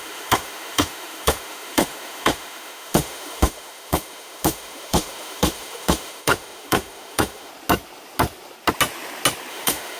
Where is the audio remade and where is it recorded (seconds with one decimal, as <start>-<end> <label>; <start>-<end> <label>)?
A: 0.0-7.5 remade; 7.5-9.5 recorded; 9.5-10.0 remade